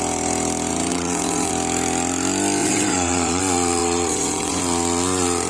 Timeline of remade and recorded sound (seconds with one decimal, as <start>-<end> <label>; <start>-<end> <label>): 0.0-0.9 recorded; 0.9-1.5 remade; 1.5-2.6 recorded; 2.6-3.4 remade; 3.4-3.8 recorded; 3.8-4.6 remade; 4.6-5.5 recorded